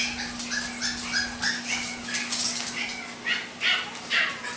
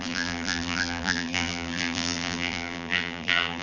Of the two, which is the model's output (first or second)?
second